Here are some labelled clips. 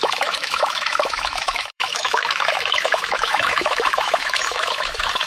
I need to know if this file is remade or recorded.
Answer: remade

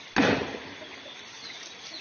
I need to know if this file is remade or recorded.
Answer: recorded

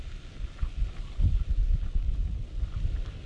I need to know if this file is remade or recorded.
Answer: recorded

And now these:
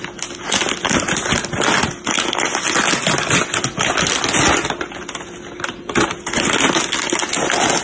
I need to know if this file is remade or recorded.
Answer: recorded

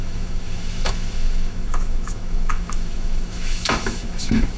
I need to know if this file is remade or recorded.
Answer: remade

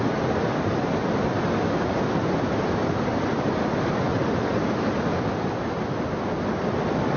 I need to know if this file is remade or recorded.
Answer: recorded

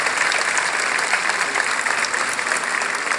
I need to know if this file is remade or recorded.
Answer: recorded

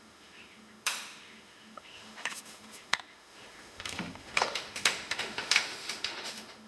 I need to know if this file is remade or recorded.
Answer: remade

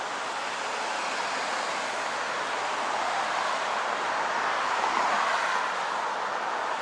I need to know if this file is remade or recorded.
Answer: recorded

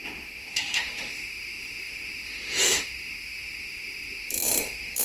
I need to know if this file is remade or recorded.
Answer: remade